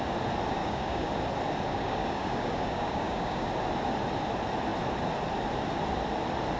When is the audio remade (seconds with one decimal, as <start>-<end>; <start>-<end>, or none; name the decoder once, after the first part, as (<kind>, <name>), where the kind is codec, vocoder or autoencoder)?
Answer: 0.6-1.1 (codec, DAC); 1.7-3.5